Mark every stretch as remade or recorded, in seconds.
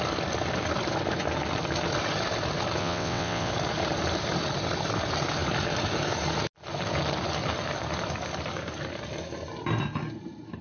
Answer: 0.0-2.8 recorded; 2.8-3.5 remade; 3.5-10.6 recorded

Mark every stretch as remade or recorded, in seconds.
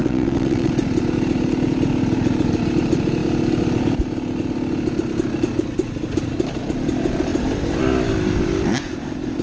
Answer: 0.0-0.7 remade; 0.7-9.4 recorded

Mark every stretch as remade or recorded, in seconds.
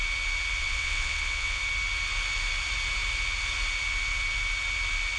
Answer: 0.0-0.6 recorded; 0.6-1.6 remade; 1.6-5.2 recorded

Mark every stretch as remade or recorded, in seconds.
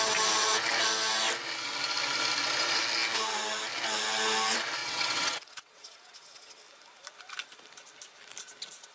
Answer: 0.0-4.8 recorded; 4.8-6.6 remade; 6.6-8.9 recorded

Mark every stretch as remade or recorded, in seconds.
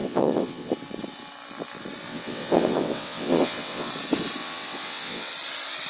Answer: 0.0-0.7 remade; 0.7-2.1 recorded; 2.1-3.9 remade; 3.9-4.4 recorded; 4.4-5.3 remade; 5.3-5.9 recorded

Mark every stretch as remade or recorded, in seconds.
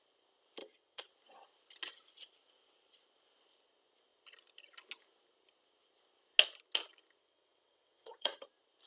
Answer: 0.0-0.6 recorded; 0.6-1.1 remade; 1.1-7.2 recorded; 7.2-8.4 remade; 8.4-8.9 recorded